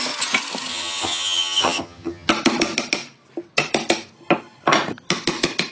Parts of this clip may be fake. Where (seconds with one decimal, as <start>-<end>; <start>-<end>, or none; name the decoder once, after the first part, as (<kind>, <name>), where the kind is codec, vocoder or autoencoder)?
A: 0.7-2.3 (vocoder, HiFi-GAN)